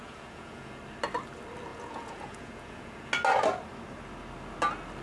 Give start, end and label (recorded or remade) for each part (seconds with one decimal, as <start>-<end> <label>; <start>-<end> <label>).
0.0-0.7 remade; 0.7-1.7 recorded; 1.7-3.1 remade; 3.1-5.0 recorded